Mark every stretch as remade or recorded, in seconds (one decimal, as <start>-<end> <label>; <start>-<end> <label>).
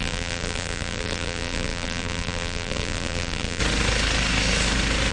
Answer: 0.0-3.6 remade; 3.6-5.1 recorded